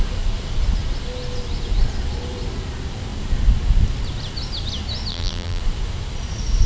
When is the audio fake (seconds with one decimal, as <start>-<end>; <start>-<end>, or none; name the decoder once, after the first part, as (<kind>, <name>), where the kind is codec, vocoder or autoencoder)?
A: 5.1-5.6 (vocoder, BigVGAN v2)